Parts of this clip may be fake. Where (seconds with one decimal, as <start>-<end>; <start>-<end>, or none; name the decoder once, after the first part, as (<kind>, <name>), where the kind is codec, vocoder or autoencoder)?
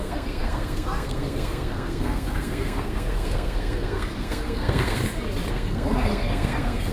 0.0-5.0 (codec, SNAC); 5.5-6.9